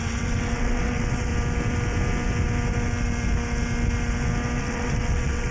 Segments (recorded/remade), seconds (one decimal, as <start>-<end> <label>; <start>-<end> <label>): 0.0-1.3 remade; 1.3-4.6 recorded; 4.6-5.5 remade

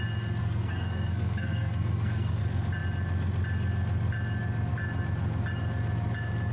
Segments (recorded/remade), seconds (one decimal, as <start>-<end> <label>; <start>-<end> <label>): 0.0-0.4 recorded; 0.4-2.4 remade; 2.4-6.5 recorded

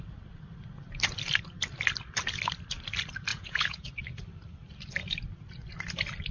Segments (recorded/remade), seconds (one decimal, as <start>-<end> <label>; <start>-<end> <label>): 0.0-3.3 recorded; 3.3-3.9 remade; 3.9-6.3 recorded

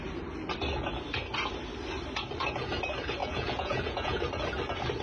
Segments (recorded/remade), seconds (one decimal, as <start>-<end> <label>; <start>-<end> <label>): 0.0-3.2 recorded; 3.2-4.2 remade; 4.2-5.0 recorded

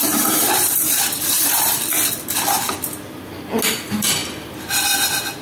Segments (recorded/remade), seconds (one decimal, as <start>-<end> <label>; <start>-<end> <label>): 0.0-1.8 remade; 1.8-3.7 recorded; 3.7-4.2 remade; 4.2-5.4 recorded

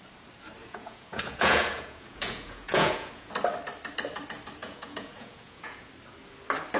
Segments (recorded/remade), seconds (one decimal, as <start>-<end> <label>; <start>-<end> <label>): 0.0-0.6 recorded; 0.6-3.3 remade; 3.3-4.6 recorded; 4.6-5.9 remade; 5.9-6.8 recorded

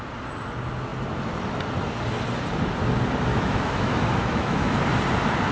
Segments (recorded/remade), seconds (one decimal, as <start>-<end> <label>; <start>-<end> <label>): 0.0-3.3 recorded; 3.3-4.7 remade; 4.7-5.5 recorded

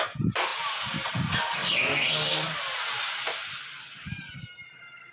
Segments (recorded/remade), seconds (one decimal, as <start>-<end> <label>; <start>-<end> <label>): 0.0-5.1 recorded